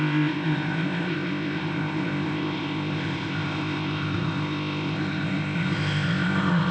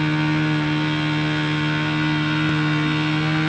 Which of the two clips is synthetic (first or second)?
first